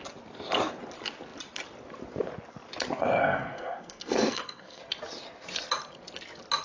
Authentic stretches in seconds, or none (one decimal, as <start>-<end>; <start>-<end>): 0.0-3.2; 4.8-6.6